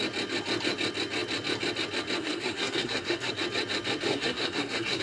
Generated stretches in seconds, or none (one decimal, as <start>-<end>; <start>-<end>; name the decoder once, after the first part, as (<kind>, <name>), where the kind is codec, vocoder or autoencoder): 2.2-3.3 (codec, SNAC); 4.1-5.0